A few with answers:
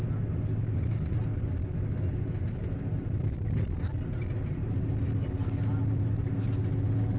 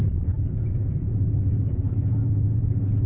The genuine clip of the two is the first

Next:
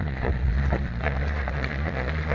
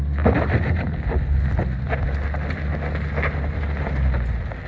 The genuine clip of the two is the second